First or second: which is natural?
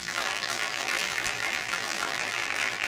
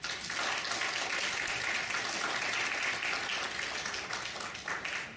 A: second